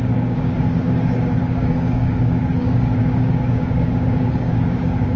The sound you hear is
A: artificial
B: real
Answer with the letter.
A